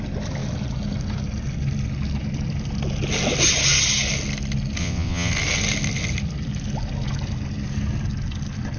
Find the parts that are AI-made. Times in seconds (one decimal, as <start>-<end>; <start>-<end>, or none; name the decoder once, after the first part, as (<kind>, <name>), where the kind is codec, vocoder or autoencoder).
4.8-5.3 (vocoder, WaveNeXt)